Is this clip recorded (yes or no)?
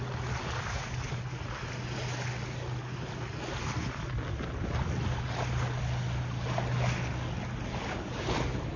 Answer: yes